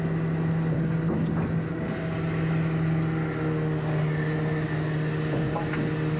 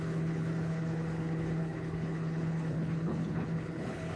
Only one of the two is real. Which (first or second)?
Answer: first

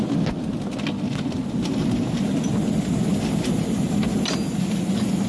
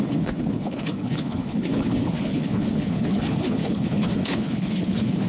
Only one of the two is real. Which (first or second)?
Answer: first